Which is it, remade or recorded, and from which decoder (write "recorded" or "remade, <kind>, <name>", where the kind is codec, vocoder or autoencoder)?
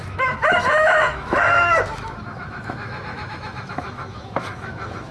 remade, autoencoder, DAC-VAE